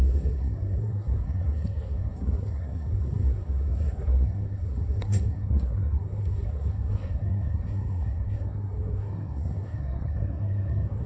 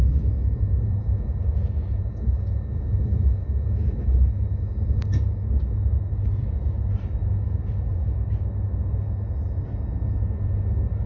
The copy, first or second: first